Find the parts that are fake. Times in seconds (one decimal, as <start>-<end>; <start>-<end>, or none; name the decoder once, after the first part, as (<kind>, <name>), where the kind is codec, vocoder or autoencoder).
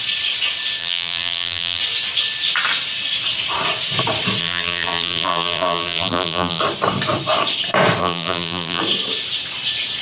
0.8-1.8 (vocoder, BigVGAN v2); 4.4-6.6; 8.0-8.8